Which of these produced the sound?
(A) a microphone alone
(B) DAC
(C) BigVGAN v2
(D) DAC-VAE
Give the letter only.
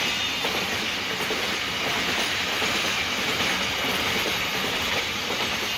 A